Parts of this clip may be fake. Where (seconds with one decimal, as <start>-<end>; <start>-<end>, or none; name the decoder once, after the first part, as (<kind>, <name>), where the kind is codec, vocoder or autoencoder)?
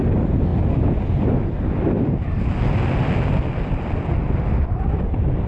none